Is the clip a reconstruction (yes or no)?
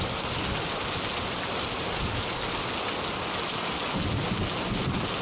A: no